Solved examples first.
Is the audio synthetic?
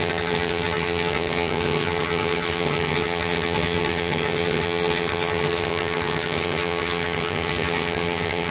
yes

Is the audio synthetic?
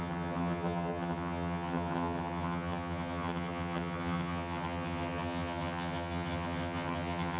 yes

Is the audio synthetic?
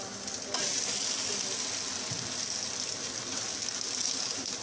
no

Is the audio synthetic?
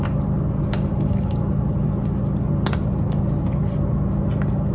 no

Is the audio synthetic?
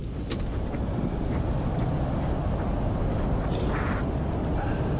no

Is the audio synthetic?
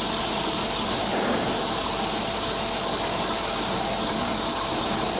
no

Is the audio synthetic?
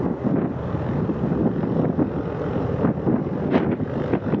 no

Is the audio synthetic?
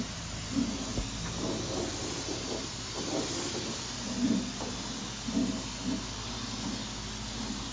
no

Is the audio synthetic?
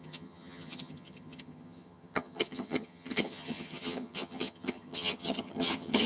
yes